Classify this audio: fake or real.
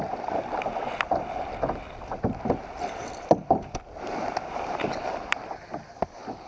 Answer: real